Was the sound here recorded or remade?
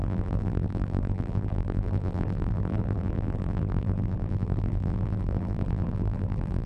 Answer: remade